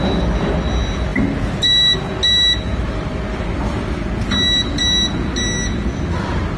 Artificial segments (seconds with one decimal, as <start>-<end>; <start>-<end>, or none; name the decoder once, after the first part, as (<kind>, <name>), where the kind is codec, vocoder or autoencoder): none